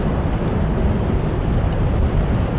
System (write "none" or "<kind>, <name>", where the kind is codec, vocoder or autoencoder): none